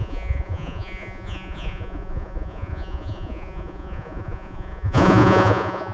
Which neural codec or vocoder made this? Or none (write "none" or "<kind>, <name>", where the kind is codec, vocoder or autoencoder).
vocoder, Vocos